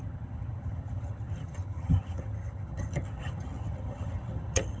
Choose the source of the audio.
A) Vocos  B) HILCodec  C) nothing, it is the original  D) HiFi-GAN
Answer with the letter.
D